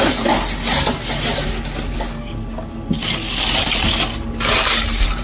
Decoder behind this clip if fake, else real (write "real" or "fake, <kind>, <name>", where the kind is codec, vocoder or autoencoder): real